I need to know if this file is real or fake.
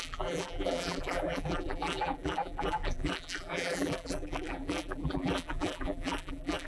fake